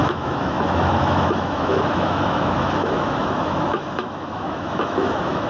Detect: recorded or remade remade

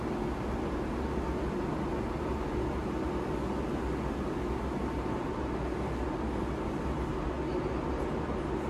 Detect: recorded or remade recorded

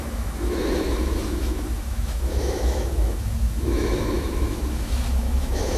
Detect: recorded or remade remade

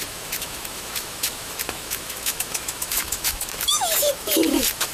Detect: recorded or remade remade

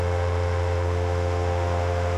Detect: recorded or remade remade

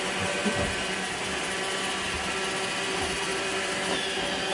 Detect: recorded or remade recorded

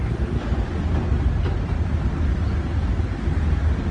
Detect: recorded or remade recorded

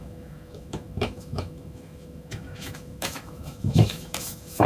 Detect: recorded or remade remade